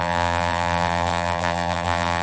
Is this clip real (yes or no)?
no